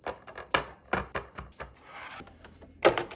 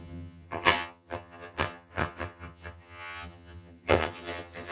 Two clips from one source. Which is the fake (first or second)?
second